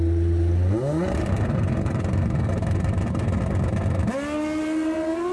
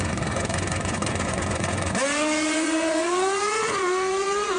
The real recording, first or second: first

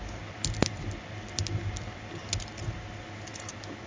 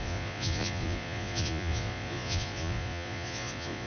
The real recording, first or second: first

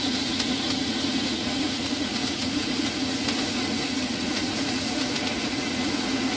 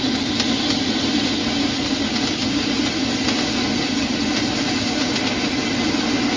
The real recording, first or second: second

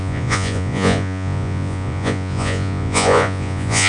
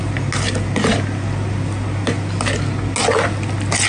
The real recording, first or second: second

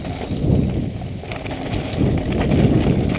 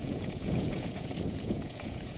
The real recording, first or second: first